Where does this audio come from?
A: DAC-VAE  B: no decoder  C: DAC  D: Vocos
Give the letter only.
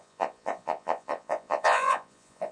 D